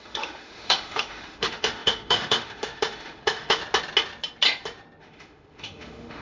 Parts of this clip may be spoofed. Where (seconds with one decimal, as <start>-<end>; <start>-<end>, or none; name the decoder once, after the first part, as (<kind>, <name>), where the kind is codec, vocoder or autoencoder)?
0.0-3.6 (autoencoder, DAC-VAE); 5.0-6.2